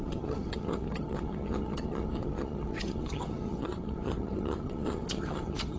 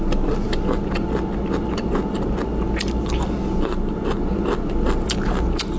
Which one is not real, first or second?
first